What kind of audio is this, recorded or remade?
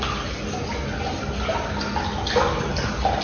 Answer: recorded